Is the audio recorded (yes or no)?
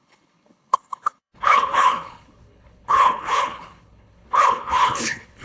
no